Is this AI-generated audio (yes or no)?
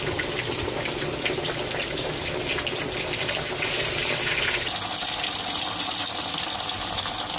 no